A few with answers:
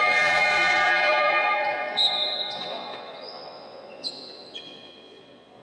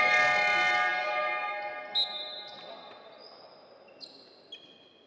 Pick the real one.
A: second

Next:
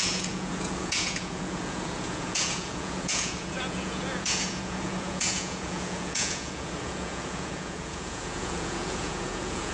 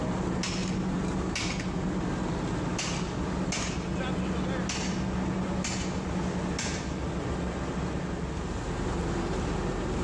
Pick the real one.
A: second